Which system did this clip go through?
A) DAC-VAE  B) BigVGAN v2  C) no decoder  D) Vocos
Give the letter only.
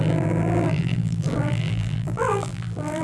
B